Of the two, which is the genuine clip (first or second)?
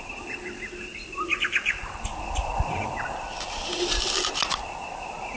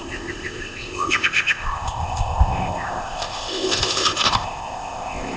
first